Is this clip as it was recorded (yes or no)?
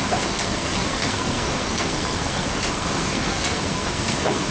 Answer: no